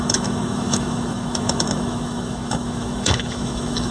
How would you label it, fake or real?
fake